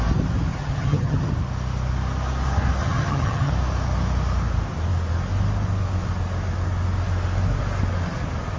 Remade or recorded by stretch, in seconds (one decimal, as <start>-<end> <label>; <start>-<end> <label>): 0.0-0.5 recorded; 0.5-1.3 remade; 1.3-2.8 recorded; 2.8-3.5 remade; 3.5-8.6 recorded